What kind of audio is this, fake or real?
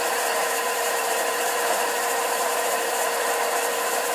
fake